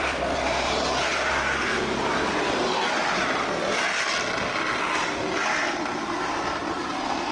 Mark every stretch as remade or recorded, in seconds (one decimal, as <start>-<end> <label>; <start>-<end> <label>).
0.0-1.7 remade; 1.7-6.0 recorded; 6.0-6.6 remade; 6.6-7.3 recorded